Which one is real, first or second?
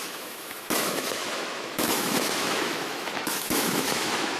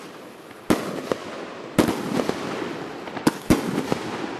second